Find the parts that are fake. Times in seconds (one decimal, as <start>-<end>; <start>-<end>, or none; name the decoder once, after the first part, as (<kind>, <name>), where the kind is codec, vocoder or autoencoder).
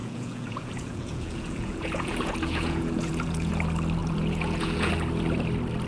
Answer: 0.0-3.5 (vocoder, Vocos); 4.0-4.9